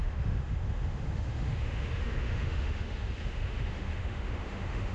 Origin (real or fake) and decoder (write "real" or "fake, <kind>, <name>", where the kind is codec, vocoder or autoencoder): fake, autoencoder, DAC-VAE